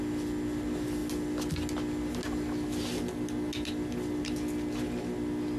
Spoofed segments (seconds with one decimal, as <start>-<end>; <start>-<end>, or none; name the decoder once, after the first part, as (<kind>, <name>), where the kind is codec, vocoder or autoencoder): none

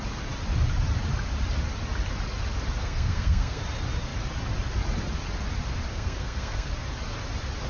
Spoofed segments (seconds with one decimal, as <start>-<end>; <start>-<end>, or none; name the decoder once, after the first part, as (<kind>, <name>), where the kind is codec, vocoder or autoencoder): 2.8-3.6 (codec, SNAC); 5.9-6.7